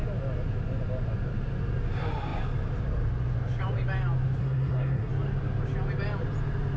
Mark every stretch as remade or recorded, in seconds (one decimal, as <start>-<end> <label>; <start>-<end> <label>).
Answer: 0.0-4.4 recorded; 4.4-5.1 remade; 5.1-6.8 recorded